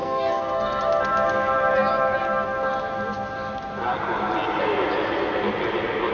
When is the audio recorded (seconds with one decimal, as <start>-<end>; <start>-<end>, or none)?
0.8-6.1

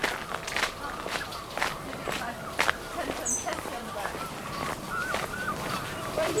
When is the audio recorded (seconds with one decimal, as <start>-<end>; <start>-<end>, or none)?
0.0-2.4; 3.4-4.4

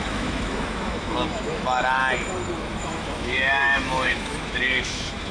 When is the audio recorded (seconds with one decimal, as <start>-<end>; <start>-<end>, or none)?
2.0-2.5